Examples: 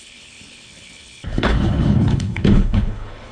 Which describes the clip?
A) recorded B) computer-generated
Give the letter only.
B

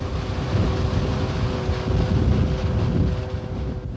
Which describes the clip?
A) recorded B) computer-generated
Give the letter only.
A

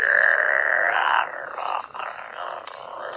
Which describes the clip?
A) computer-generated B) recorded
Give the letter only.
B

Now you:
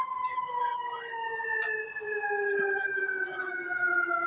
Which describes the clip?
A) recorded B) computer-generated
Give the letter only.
A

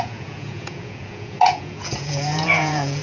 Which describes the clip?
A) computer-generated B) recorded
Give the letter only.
A